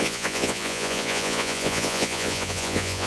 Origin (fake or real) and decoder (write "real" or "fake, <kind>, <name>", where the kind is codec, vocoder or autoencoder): fake, vocoder, Vocos